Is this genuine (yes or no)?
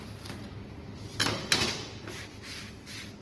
yes